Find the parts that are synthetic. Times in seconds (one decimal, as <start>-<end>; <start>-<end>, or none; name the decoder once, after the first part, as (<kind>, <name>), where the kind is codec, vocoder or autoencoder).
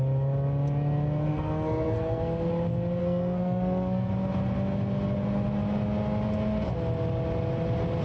1.3-2.5 (codec, SNAC); 3.0-4.1